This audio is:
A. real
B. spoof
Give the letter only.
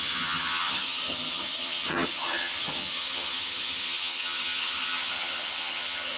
B